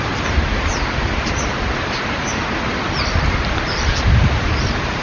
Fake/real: real